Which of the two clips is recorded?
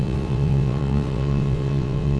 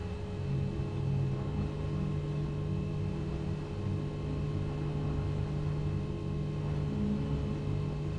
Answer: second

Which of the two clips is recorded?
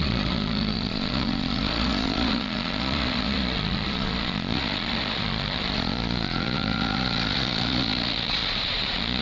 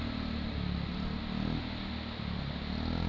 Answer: second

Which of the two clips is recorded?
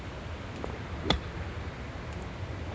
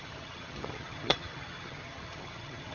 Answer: first